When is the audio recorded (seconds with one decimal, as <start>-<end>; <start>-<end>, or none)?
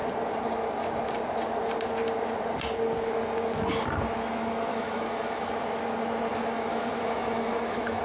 0.0-4.7; 5.5-6.3